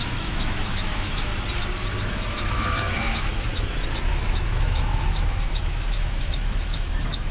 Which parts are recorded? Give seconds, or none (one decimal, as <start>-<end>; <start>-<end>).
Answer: 1.3-2.0; 3.5-4.1